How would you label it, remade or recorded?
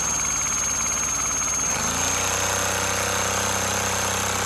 recorded